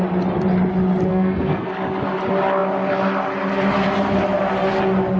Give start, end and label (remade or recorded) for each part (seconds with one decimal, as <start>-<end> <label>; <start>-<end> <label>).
0.0-1.1 recorded; 1.1-1.7 remade; 1.7-5.2 recorded